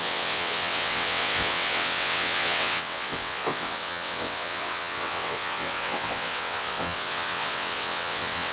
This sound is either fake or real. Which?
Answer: fake